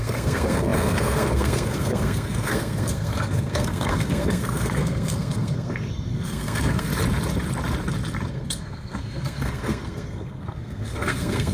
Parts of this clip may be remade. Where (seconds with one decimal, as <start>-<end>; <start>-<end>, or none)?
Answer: 0.0-6.9; 8.3-11.5